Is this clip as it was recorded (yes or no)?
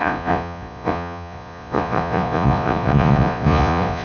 no